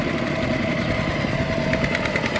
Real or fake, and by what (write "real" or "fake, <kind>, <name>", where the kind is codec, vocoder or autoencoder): real